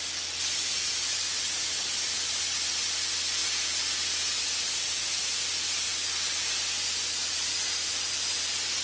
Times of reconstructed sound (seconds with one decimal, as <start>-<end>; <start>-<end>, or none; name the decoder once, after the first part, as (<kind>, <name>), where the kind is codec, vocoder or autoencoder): none